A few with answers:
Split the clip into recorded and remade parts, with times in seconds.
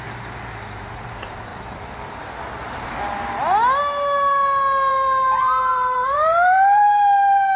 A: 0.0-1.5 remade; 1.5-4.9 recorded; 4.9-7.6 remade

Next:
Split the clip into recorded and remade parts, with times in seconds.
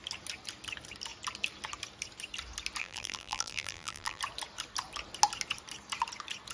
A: 0.0-2.8 recorded; 2.8-4.2 remade; 4.2-6.5 recorded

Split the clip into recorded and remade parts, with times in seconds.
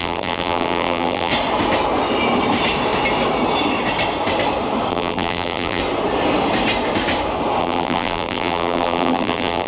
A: 0.0-1.3 remade; 1.3-4.9 recorded; 4.9-5.8 remade; 5.8-7.6 recorded; 7.6-9.7 remade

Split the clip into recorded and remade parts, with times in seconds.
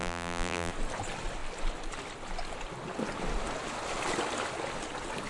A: 0.0-0.7 remade; 0.7-5.3 recorded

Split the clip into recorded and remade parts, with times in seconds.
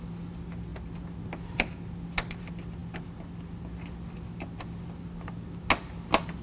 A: 0.0-6.4 recorded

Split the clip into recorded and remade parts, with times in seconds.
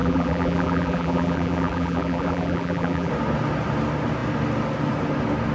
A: 0.0-3.1 remade; 3.1-5.5 recorded